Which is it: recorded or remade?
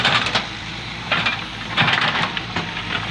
remade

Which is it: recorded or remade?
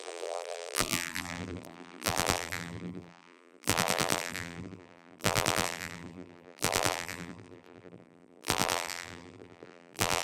remade